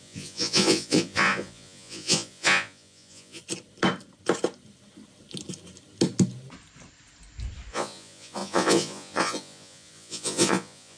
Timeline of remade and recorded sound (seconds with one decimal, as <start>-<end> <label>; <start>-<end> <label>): 0.0-3.4 remade; 3.4-7.7 recorded; 7.7-11.0 remade